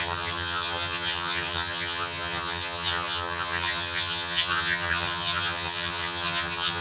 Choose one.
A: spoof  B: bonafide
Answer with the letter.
A